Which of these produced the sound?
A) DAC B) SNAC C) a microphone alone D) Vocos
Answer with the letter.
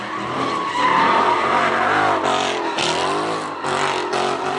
C